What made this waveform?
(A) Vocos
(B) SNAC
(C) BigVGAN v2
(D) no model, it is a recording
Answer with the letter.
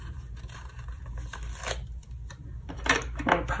D